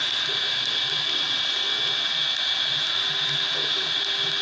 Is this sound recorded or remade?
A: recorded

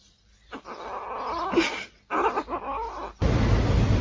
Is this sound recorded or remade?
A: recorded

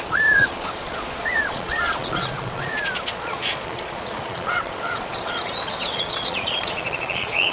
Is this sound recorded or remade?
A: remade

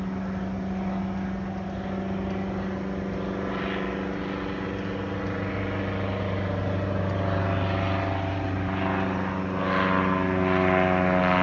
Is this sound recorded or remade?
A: recorded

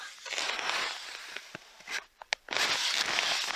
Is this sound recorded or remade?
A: recorded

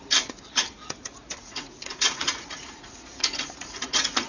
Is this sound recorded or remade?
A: remade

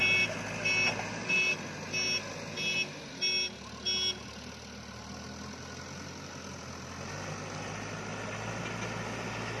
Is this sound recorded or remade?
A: recorded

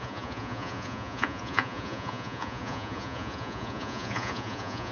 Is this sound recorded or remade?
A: remade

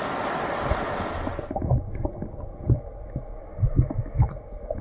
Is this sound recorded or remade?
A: recorded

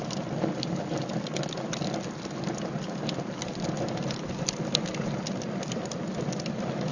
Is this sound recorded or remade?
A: recorded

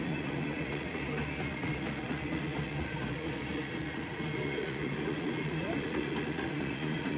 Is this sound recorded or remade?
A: remade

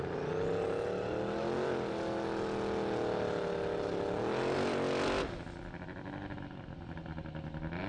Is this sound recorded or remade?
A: recorded